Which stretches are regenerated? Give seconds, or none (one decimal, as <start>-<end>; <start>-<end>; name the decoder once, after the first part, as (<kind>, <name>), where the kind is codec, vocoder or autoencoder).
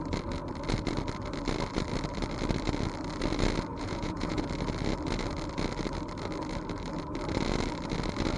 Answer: 3.7-4.4 (vocoder, Vocos)